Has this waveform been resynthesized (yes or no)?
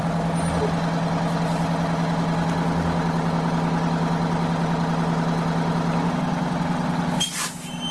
no